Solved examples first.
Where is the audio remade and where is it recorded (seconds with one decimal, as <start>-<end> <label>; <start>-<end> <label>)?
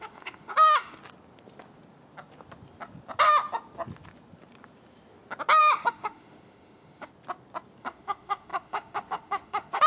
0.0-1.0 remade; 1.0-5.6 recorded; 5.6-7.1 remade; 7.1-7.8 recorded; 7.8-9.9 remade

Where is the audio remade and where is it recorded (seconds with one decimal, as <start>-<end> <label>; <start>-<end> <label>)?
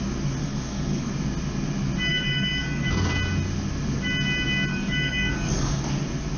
0.0-0.4 recorded; 0.4-1.1 remade; 1.1-2.1 recorded; 2.1-3.1 remade; 3.1-4.7 recorded; 4.7-5.8 remade; 5.8-6.4 recorded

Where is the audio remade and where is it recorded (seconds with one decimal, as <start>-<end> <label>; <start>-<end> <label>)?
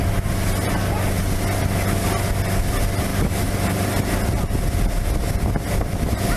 0.0-6.4 recorded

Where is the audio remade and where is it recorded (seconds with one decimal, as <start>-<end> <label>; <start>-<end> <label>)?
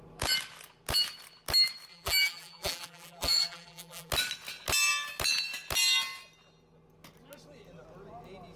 0.0-1.9 recorded; 1.9-4.1 remade; 4.1-8.6 recorded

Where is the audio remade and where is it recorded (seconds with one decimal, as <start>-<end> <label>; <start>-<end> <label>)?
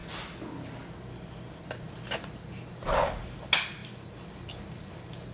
0.0-5.3 recorded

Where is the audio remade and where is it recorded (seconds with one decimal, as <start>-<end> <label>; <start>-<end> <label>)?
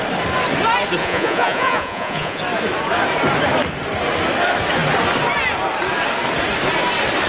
0.0-1.0 recorded; 1.0-2.4 remade; 2.4-7.3 recorded